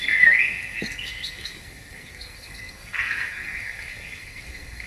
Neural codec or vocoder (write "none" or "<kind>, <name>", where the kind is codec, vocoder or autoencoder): codec, SNAC